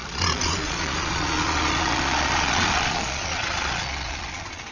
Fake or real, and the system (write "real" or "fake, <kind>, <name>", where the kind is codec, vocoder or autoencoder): fake, vocoder, Vocos